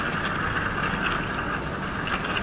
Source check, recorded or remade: recorded